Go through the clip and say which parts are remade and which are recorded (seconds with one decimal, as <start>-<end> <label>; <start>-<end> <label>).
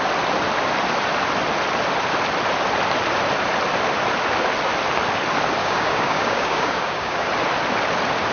0.0-5.6 recorded; 5.6-7.3 remade; 7.3-8.3 recorded